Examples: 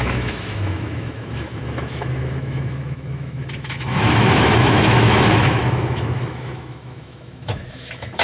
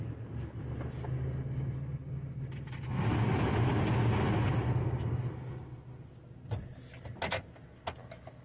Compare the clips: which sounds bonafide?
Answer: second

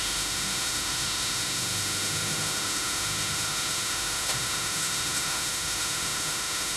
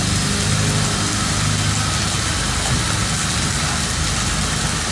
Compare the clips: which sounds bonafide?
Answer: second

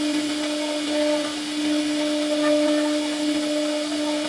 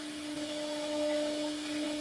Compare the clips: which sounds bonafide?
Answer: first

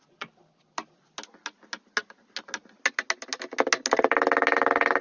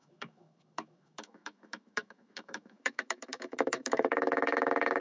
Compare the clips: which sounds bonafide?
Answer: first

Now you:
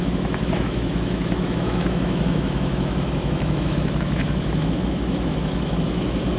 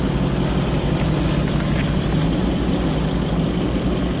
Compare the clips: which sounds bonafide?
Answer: second